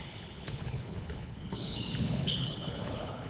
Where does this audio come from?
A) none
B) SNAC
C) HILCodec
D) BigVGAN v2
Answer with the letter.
C